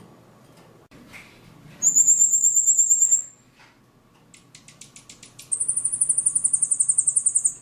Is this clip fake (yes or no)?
no